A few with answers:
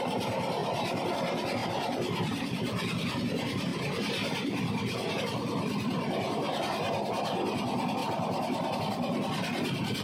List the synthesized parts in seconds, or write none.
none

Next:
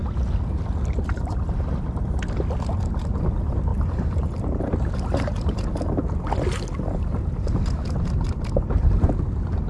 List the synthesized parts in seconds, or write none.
3.7-4.9

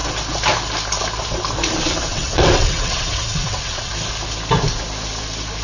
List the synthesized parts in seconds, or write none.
2.1-3.9

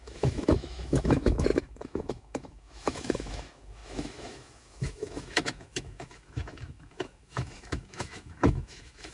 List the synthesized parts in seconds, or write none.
0.0-9.1

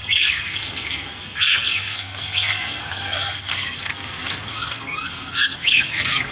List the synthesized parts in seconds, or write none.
0.0-6.3

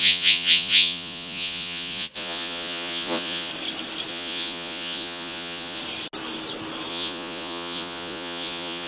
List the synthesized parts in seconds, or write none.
0.0-3.5; 4.1-5.8; 6.9-8.9

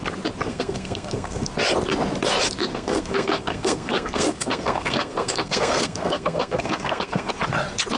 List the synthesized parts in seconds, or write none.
0.5-1.5; 2.7-7.3

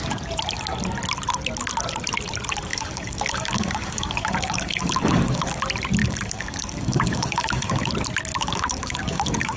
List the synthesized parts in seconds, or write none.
2.7-5.6; 6.0-7.9; 8.3-9.6